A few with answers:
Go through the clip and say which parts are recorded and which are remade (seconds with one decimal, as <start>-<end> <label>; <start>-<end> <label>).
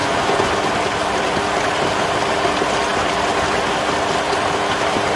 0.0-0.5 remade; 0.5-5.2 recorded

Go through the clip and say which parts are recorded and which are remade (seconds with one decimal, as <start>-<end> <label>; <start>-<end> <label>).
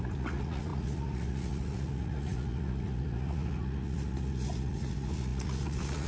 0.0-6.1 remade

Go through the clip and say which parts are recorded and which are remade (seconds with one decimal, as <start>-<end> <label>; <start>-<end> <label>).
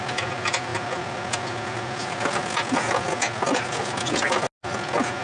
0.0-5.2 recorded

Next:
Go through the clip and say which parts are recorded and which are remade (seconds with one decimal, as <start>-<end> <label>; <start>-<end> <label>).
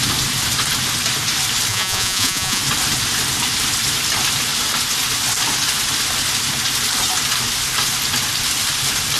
0.0-1.7 recorded; 1.7-2.6 remade; 2.6-9.2 recorded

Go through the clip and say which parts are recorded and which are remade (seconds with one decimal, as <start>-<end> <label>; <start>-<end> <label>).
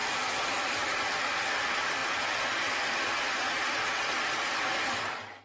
0.0-5.4 recorded